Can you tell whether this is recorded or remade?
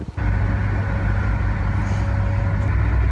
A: recorded